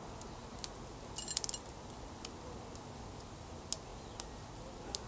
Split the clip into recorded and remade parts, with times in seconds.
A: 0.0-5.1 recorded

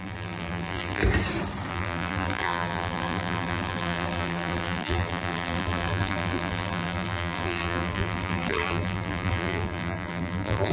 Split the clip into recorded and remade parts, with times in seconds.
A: 0.0-1.0 remade; 1.0-1.7 recorded; 1.7-10.7 remade

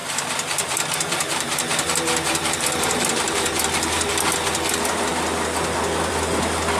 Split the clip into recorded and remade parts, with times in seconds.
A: 0.0-4.1 remade; 4.1-6.8 recorded

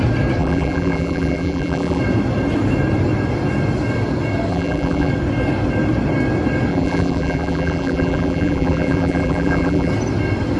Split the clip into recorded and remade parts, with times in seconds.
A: 0.0-0.4 recorded; 0.4-2.0 remade; 2.0-4.5 recorded; 4.5-5.1 remade; 5.1-6.7 recorded; 6.7-9.9 remade; 9.9-10.6 recorded

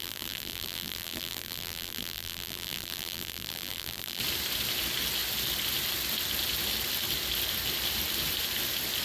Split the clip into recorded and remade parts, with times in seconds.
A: 0.0-4.2 remade; 4.2-9.0 recorded

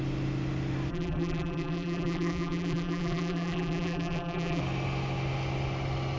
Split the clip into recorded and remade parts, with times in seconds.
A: 0.0-0.9 recorded; 0.9-4.6 remade; 4.6-6.2 recorded

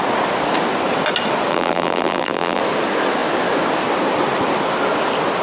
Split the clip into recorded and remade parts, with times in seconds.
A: 0.0-1.5 recorded; 1.5-2.6 remade; 2.6-5.4 recorded